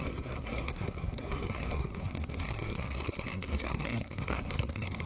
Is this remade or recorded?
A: remade